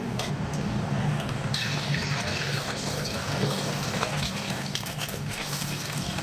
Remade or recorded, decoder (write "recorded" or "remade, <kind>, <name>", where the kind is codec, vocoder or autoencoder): remade, codec, DAC